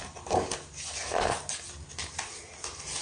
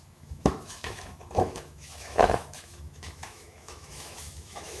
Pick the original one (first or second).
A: first